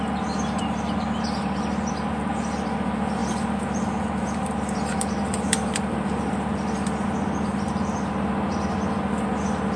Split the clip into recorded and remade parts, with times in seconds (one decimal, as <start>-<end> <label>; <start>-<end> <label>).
0.0-9.8 recorded